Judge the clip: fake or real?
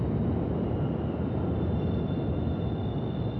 real